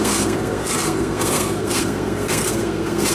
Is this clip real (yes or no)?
no